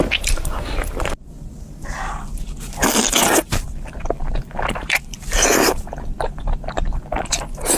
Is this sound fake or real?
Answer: fake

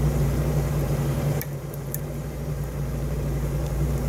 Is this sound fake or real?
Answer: fake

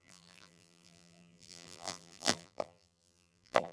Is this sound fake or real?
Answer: fake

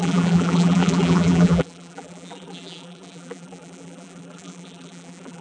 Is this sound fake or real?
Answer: fake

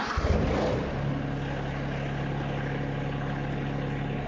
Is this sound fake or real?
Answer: real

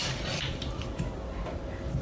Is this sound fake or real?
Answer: real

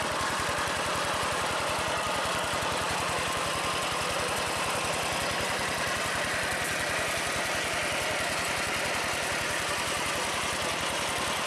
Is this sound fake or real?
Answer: fake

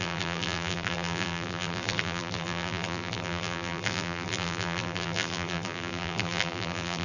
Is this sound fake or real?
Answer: fake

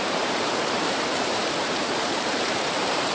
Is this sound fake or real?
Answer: fake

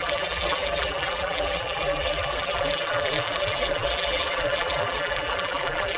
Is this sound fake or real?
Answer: fake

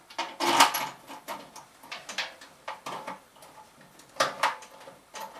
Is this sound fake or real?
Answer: fake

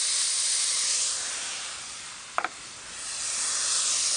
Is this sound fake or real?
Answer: real